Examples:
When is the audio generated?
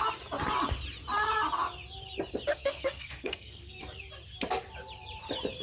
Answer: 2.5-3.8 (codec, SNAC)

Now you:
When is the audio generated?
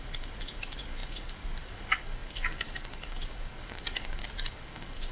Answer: 0.0-5.1 (codec, DAC)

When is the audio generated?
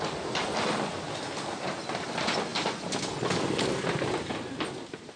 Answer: none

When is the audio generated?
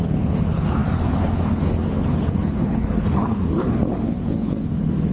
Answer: 0.0-5.1 (codec, HILCodec)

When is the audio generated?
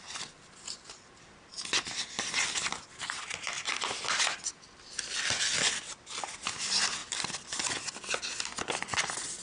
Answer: none